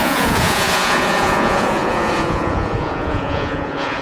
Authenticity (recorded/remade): remade